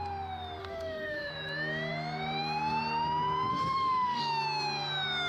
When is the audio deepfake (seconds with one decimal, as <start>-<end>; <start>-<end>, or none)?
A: 0.6-1.3; 3.5-4.2